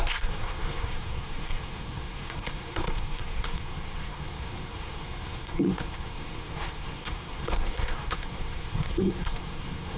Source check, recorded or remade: remade